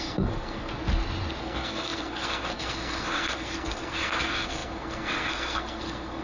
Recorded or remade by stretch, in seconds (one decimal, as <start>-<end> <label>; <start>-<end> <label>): 0.0-0.7 remade; 0.7-1.4 recorded; 1.4-6.2 remade